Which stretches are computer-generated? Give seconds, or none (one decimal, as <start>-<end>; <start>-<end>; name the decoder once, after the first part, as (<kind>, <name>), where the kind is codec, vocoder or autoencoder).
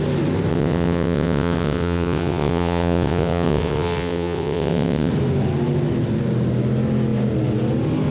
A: 0.5-5.1 (vocoder, WaveNeXt)